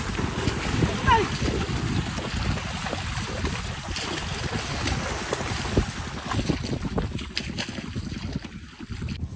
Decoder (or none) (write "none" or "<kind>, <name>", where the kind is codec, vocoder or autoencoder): none